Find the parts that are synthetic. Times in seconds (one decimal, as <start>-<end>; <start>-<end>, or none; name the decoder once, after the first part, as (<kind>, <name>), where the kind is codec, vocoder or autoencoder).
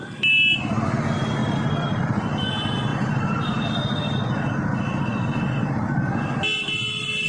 1.4-2.5 (vocoder, BigVGAN v2); 2.9-3.6; 5.1-6.0